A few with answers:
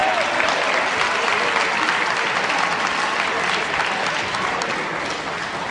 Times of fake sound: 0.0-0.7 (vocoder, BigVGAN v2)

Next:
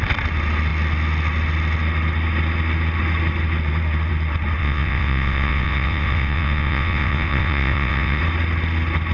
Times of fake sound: 4.6-8.2 (vocoder, WaveNeXt)